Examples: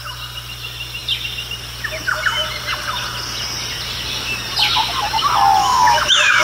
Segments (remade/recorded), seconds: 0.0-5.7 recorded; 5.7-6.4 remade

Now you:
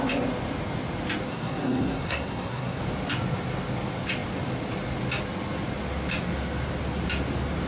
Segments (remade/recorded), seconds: 0.0-1.3 recorded; 1.3-2.8 remade; 2.8-7.7 recorded

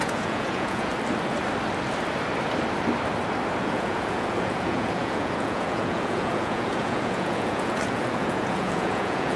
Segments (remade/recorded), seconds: 0.0-0.9 remade; 0.9-3.6 recorded; 3.6-9.4 remade

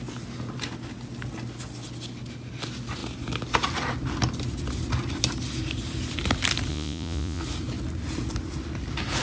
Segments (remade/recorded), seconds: 0.0-6.7 recorded; 6.7-7.4 remade; 7.4-9.2 recorded